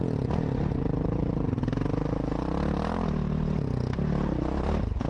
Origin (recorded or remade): recorded